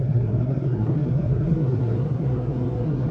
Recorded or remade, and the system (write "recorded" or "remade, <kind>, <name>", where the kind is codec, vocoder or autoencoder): remade, codec, SNAC